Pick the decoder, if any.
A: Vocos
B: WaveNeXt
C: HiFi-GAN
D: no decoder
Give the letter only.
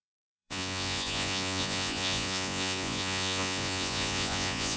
A